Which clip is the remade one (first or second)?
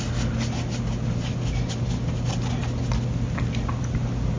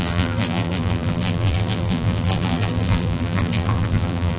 second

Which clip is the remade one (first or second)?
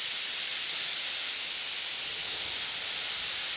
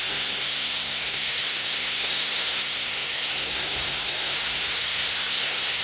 second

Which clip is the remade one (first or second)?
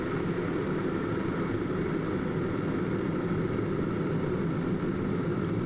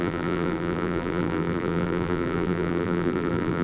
second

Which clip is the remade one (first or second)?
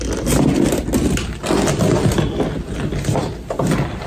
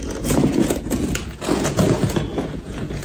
second